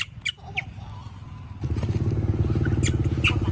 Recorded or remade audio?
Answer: recorded